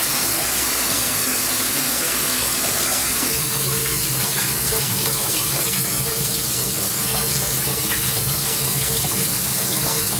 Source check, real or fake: fake